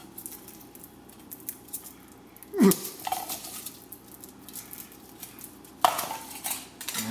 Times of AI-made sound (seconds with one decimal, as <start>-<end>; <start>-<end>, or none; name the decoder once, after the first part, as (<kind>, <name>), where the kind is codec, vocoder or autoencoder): none